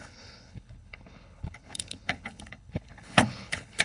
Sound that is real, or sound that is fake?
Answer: fake